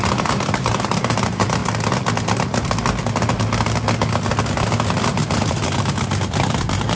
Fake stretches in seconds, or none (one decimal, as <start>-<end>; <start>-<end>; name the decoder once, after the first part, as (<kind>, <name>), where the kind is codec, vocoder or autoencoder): 0.0-1.6 (vocoder, BigVGAN v2); 5.4-7.0